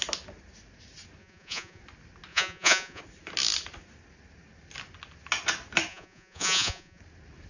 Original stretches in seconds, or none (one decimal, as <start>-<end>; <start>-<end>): 0.0-1.2; 1.8-2.3; 3.0-5.9; 7.0-7.5